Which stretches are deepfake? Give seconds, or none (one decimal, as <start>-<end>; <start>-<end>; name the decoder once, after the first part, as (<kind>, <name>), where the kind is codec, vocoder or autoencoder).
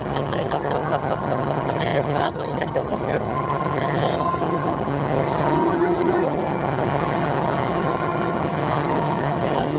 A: 0.0-9.8 (vocoder, HiFi-GAN)